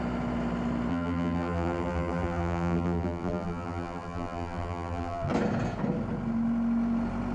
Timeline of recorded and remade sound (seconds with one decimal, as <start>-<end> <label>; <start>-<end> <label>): 0.0-0.9 recorded; 0.9-5.3 remade; 5.3-7.3 recorded